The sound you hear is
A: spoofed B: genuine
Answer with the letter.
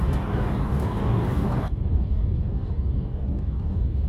A